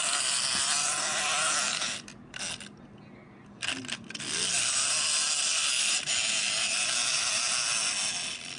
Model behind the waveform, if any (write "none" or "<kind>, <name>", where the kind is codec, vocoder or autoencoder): none